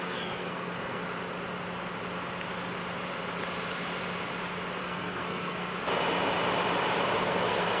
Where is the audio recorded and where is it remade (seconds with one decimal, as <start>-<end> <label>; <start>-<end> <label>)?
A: 0.0-1.0 remade; 1.0-4.8 recorded; 4.8-5.7 remade; 5.7-7.2 recorded; 7.2-7.8 remade